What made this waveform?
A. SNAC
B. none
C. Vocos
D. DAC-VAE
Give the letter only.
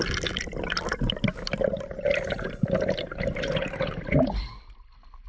B